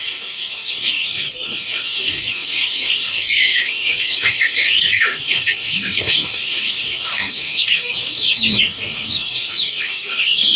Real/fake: fake